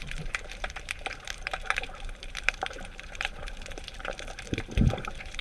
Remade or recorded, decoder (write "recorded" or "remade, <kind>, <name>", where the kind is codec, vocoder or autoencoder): remade, vocoder, BigVGAN v2